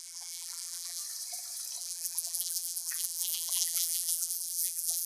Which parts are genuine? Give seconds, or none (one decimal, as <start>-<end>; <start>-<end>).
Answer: 1.0-1.8